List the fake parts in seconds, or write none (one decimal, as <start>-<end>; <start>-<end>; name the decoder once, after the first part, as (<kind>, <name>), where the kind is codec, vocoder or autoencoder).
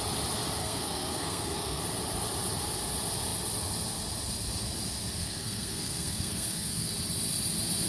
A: 0.6-1.8 (codec, SNAC); 5.2-6.9